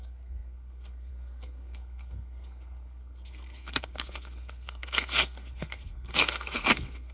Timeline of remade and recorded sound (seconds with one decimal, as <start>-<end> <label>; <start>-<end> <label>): 0.0-7.1 remade